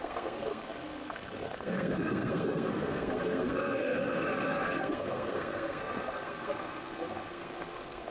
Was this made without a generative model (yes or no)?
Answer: no